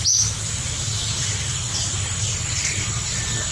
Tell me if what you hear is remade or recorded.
recorded